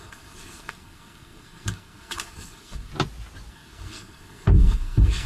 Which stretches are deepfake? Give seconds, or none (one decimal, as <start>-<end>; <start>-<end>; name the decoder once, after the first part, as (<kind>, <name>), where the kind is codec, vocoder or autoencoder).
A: 0.0-2.9 (codec, SNAC); 3.5-5.3

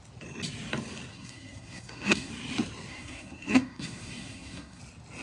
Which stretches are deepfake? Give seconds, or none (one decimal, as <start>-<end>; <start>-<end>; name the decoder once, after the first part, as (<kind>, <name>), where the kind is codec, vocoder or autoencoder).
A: 1.1-2.3 (codec, SNAC); 2.9-4.8

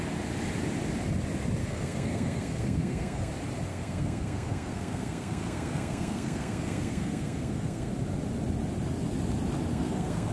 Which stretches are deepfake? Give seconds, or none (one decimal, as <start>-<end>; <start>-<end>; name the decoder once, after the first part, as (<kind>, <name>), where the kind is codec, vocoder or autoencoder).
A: 1.6-3.3 (codec, SNAC); 3.7-7.9; 9.7-10.3

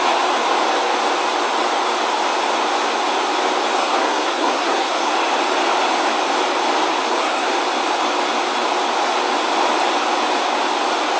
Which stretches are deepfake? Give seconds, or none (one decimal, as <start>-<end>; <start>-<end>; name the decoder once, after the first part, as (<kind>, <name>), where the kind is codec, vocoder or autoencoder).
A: 3.8-5.1 (codec, SNAC); 7.1-7.6

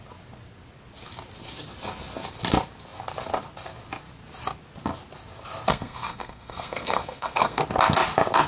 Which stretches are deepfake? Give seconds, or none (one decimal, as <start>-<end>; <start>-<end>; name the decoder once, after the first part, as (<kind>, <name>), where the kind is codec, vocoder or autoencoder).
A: 5.7-7.6 (codec, SNAC)

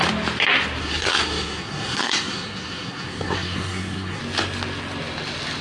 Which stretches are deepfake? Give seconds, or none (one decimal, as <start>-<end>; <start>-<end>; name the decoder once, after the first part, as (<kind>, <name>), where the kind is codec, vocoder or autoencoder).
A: 0.8-4.2 (codec, SNAC)